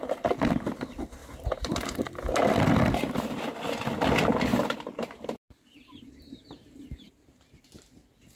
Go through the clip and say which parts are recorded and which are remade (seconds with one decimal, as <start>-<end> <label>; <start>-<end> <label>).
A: 0.0-1.2 recorded; 1.2-2.0 remade; 2.0-4.5 recorded; 4.5-7.6 remade; 7.6-8.4 recorded